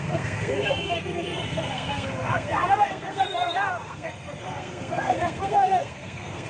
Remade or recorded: remade